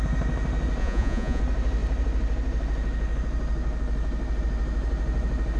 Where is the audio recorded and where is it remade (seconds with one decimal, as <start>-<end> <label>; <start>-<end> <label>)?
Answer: 0.0-0.8 recorded; 0.8-1.4 remade; 1.4-5.6 recorded